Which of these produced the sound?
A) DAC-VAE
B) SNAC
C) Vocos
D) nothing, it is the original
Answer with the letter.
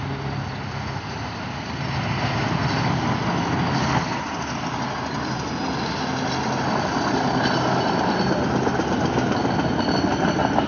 D